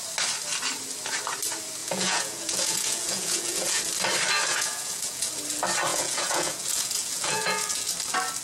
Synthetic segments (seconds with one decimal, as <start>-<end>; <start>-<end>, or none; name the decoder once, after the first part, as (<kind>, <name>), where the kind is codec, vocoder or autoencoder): 1.8-3.8 (vocoder, Vocos); 4.5-5.3; 5.9-7.9